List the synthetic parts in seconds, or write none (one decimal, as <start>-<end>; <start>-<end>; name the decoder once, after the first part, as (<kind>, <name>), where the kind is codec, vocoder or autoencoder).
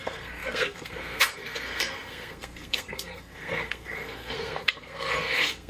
0.0-5.7 (codec, SNAC)